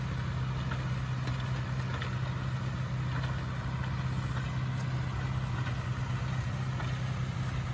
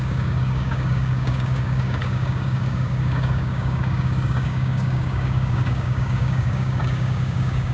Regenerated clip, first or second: second